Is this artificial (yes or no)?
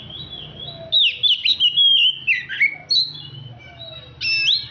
no